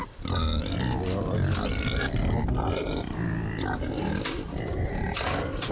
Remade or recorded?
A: recorded